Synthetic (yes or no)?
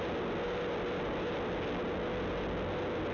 no